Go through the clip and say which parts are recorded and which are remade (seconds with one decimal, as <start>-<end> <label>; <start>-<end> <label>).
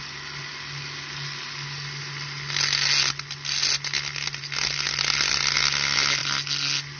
0.0-7.0 recorded